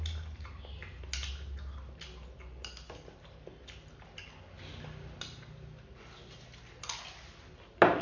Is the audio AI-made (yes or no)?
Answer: no